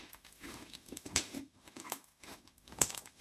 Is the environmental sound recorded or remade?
remade